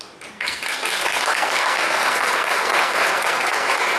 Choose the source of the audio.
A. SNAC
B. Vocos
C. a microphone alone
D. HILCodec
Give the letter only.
A